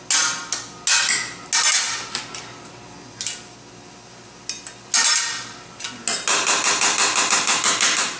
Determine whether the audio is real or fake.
real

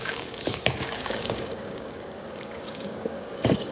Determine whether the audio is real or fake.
fake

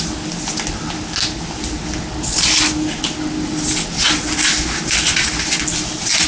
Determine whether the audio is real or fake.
real